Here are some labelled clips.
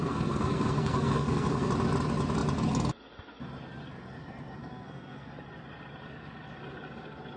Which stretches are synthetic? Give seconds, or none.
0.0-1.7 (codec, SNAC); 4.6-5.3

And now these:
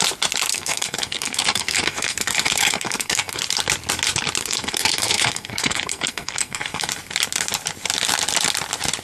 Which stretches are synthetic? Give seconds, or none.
0.5-3.4 (codec, SNAC); 4.4-6.9

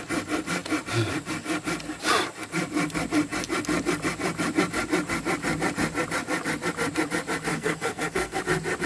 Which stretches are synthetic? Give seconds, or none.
7.5-8.4 (codec, SNAC)

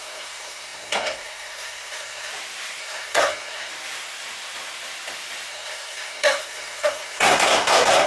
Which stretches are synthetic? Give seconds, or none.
0.0-2.3 (codec, SNAC); 2.8-3.7; 5.5-8.1

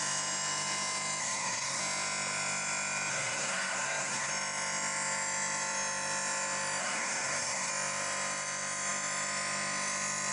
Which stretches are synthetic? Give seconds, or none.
1.2-1.8 (codec, SNAC); 3.1-4.3; 6.8-7.7

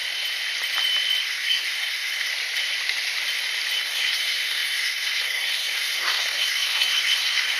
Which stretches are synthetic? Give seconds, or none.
1.2-2.3 (codec, SNAC); 3.8-7.6

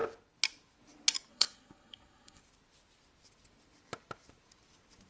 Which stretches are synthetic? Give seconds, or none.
1.3-2.4 (codec, SNAC)